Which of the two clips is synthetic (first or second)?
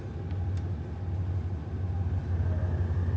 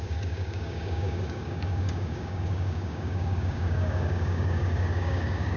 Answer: second